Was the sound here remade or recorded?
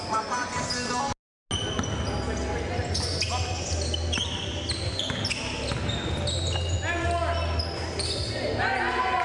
recorded